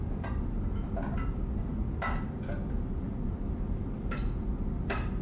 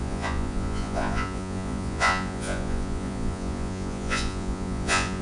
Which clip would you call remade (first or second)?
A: second